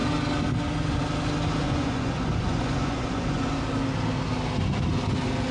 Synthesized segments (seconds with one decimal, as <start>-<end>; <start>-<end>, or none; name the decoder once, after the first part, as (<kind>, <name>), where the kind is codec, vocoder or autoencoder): 1.6-3.4 (vocoder, Vocos)